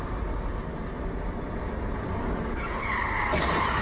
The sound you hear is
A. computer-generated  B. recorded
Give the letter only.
B